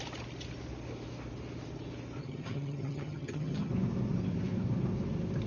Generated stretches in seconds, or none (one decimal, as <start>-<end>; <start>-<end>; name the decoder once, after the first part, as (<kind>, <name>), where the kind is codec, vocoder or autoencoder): 2.2-3.7 (vocoder, HiFi-GAN)